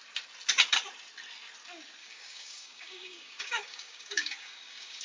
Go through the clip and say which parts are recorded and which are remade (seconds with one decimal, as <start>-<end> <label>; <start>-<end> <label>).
0.0-2.0 recorded; 2.0-5.0 remade

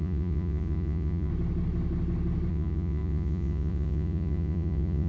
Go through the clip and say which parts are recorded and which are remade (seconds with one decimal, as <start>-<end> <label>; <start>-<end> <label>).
0.0-1.3 remade; 1.3-2.5 recorded; 2.5-5.1 remade

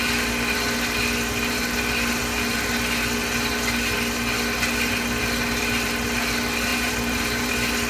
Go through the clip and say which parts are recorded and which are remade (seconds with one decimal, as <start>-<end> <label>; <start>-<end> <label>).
0.0-6.7 recorded; 6.7-7.5 remade; 7.5-7.9 recorded

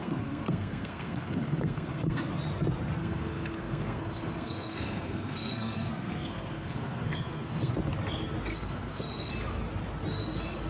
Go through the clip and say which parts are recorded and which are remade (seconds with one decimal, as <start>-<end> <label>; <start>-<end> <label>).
0.0-2.3 remade; 2.3-3.0 recorded; 3.0-7.7 remade; 7.7-8.5 recorded; 8.5-9.3 remade; 9.3-10.7 recorded

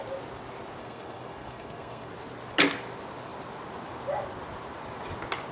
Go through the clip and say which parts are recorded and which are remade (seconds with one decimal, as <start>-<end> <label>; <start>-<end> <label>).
0.0-0.8 recorded; 0.8-2.1 remade; 2.1-5.5 recorded

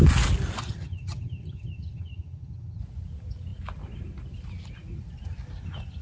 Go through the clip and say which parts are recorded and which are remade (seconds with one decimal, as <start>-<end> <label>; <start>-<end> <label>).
0.0-0.6 recorded; 0.6-2.8 remade; 2.8-6.0 recorded

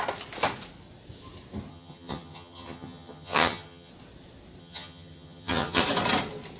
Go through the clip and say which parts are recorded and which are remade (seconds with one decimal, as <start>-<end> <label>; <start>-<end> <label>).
0.0-1.7 recorded; 1.7-3.9 remade; 3.9-4.6 recorded; 4.6-5.8 remade; 5.8-6.6 recorded

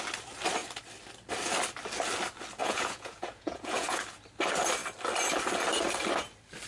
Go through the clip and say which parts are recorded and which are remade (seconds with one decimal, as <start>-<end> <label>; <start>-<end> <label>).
0.0-2.6 recorded; 2.6-4.0 remade; 4.0-6.7 recorded